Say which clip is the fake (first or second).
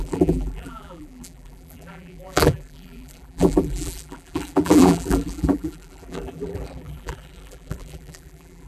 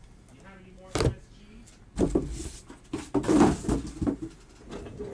first